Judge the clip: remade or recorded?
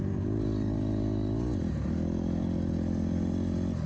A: recorded